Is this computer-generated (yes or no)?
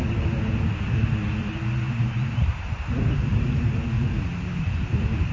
no